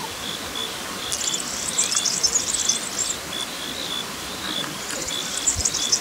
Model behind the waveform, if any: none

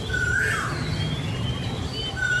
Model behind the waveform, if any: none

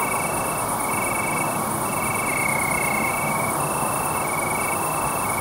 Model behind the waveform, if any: none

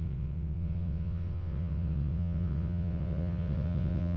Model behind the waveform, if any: vocoder, WaveNeXt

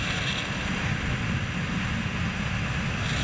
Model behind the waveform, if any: none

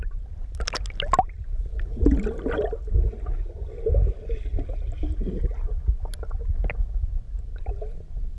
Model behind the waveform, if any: none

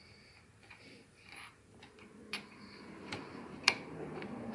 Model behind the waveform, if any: vocoder, BigVGAN v2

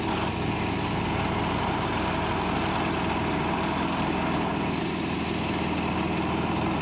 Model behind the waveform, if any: none